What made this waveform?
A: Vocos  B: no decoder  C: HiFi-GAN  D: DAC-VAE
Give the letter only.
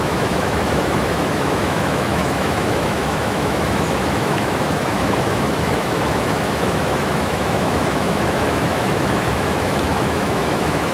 D